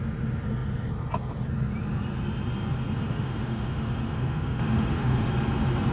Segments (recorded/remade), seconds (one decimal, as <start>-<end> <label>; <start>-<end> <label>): 0.0-3.0 recorded; 3.0-5.3 remade; 5.3-5.9 recorded